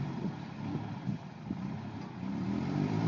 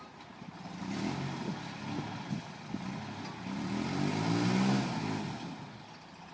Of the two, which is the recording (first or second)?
second